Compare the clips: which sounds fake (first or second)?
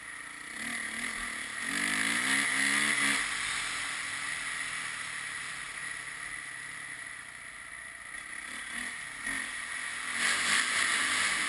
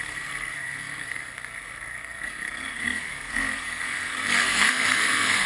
second